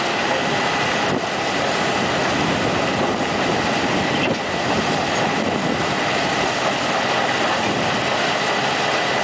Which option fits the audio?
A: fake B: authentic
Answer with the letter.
B